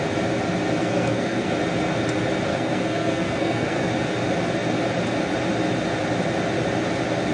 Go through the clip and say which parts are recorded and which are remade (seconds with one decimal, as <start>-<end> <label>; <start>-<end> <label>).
0.0-0.8 recorded; 0.8-1.5 remade; 1.5-2.5 recorded; 2.5-3.9 remade; 3.9-7.3 recorded